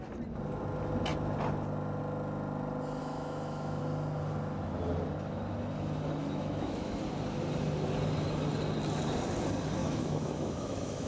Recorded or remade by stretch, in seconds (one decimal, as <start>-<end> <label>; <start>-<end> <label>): 0.0-3.0 recorded; 3.0-3.8 remade; 3.8-6.2 recorded; 6.2-7.0 remade; 7.0-9.8 recorded; 9.8-11.1 remade